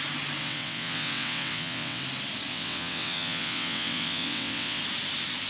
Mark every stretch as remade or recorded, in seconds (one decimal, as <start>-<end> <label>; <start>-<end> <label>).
0.0-0.4 recorded; 0.4-2.0 remade; 2.0-2.5 recorded; 2.5-4.8 remade; 4.8-5.5 recorded